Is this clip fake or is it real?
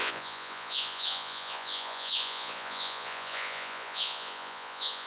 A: fake